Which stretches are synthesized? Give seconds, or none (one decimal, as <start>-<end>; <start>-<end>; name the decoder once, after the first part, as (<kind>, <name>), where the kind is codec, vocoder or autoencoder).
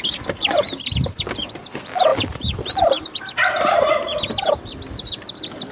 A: none